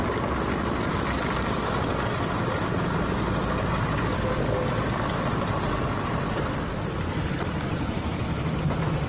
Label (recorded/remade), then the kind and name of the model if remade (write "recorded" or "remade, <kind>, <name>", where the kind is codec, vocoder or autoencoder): recorded